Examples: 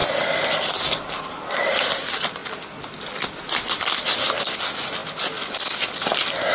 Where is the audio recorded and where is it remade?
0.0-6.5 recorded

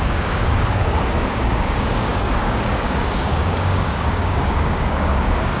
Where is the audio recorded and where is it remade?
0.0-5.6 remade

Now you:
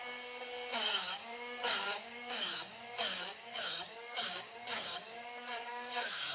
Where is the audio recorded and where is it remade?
0.0-6.3 remade